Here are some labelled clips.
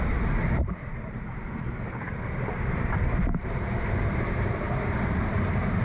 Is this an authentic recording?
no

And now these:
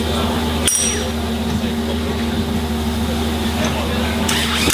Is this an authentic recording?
yes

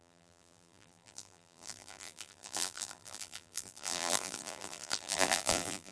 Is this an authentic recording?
no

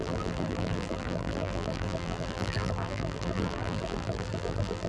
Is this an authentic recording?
no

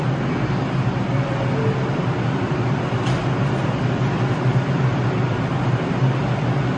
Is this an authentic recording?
no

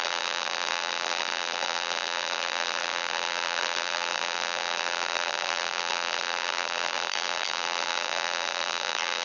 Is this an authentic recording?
no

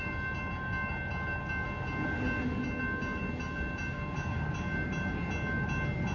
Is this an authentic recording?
yes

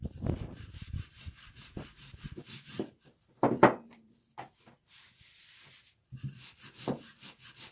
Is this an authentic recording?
no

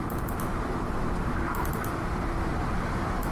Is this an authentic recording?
no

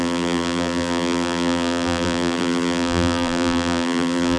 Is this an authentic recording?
no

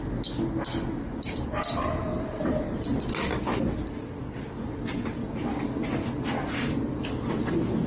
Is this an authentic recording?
yes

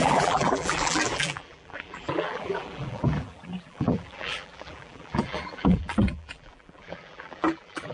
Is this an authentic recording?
no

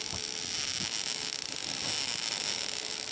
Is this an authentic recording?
yes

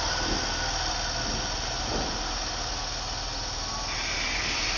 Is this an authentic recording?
yes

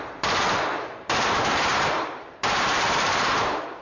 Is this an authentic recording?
no